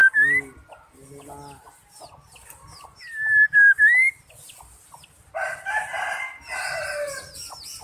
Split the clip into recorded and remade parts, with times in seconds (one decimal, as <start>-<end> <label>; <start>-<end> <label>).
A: 0.0-7.8 recorded